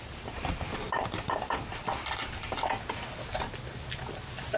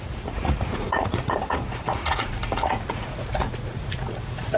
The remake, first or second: second